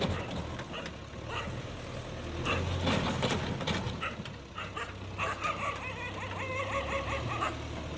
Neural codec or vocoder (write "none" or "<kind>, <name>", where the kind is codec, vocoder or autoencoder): none